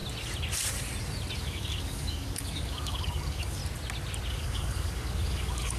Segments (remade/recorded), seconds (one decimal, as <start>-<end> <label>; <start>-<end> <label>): 0.0-1.4 recorded; 1.4-3.6 remade; 3.6-4.3 recorded; 4.3-5.8 remade